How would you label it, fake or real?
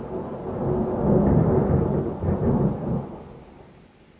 real